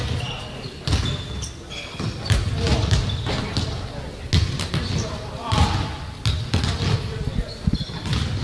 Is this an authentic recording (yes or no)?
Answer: yes